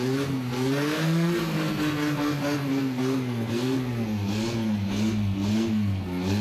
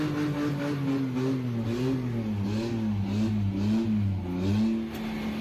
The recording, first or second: second